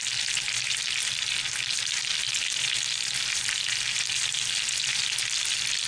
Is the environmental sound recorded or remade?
recorded